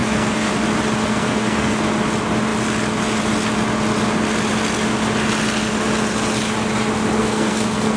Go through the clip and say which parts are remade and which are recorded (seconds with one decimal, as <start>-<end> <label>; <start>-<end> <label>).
0.0-0.5 remade; 0.5-1.0 recorded; 1.0-1.8 remade; 1.8-7.2 recorded; 7.2-8.0 remade